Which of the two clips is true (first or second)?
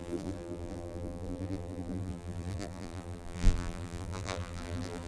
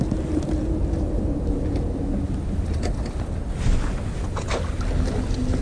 second